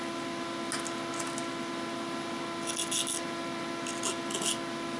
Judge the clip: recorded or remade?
recorded